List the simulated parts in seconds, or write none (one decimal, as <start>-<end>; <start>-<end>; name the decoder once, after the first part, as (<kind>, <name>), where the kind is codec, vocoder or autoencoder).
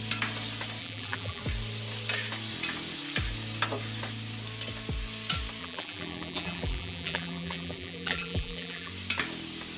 0.8-1.4 (vocoder, BigVGAN v2); 5.6-8.9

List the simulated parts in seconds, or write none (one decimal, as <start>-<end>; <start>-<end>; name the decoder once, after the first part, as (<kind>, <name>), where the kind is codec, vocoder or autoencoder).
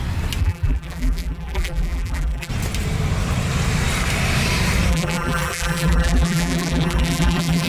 0.4-2.5 (vocoder, BigVGAN v2); 4.9-7.7